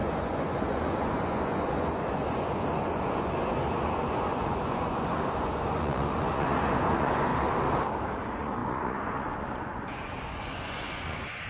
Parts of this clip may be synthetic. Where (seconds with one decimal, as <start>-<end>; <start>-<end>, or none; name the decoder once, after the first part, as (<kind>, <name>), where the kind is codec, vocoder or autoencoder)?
0.0-7.3 (vocoder, Vocos); 8.2-11.5